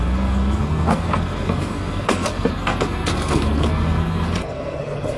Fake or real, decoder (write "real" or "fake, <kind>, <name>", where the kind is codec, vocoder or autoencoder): fake, codec, SNAC